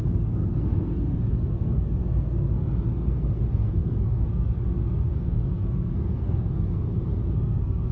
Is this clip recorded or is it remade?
remade